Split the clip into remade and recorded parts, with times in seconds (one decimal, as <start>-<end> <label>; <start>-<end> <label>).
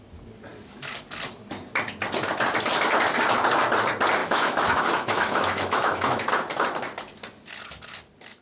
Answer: 0.0-4.2 recorded; 4.2-6.3 remade; 6.3-8.4 recorded